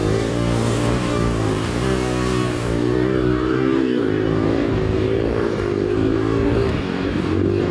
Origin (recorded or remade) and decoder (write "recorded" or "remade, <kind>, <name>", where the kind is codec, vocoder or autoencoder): remade, codec, DAC